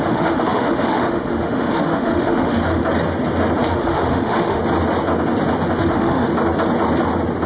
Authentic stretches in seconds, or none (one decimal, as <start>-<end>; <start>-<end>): 2.8-3.6; 4.6-5.8; 6.3-7.5